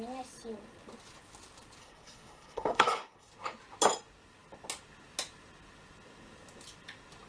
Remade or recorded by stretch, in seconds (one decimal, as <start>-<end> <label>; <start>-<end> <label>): 0.0-1.8 recorded; 1.8-3.3 remade; 3.3-7.3 recorded